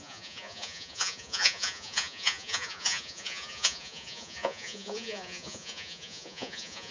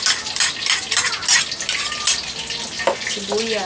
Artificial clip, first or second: first